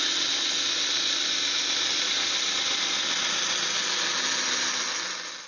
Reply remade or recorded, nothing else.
recorded